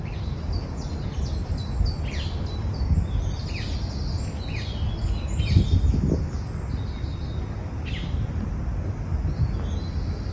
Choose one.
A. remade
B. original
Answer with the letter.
B